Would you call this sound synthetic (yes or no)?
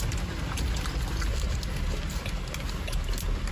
no